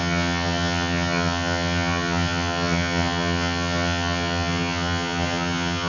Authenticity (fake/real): fake